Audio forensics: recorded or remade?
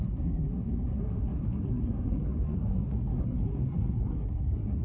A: remade